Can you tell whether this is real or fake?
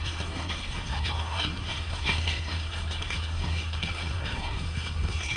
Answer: fake